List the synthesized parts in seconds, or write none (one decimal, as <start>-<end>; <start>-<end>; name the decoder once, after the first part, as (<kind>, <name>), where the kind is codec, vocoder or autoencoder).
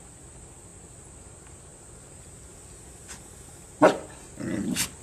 none